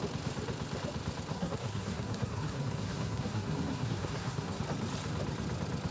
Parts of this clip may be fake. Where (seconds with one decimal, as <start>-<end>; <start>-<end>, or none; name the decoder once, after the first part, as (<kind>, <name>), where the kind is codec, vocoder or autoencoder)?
1.3-4.6 (codec, SNAC)